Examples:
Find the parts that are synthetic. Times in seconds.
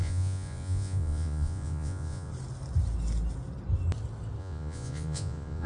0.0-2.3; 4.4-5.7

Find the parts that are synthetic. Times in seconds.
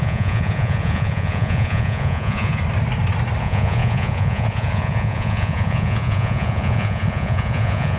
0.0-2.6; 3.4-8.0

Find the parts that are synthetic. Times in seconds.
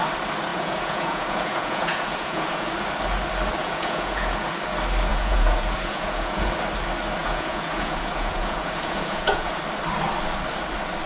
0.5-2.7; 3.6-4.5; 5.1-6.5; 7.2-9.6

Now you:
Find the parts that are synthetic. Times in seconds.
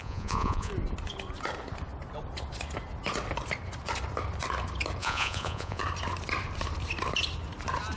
0.0-0.7; 5.0-5.8